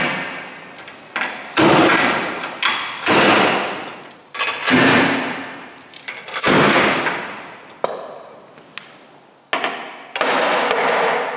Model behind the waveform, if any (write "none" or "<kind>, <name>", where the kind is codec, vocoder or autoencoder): none